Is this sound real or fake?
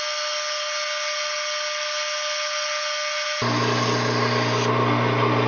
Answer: real